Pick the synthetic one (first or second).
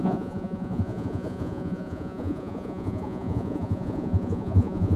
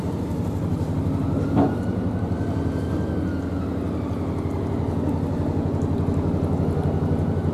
first